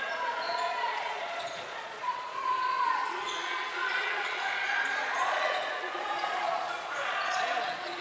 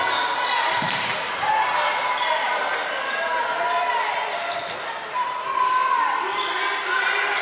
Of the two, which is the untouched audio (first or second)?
second